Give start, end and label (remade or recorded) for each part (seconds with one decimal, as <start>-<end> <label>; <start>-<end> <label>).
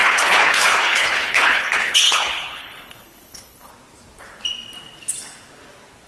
0.0-3.7 remade; 3.7-6.1 recorded